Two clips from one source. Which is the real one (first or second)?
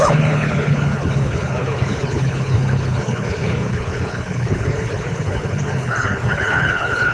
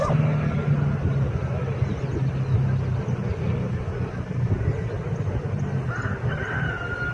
second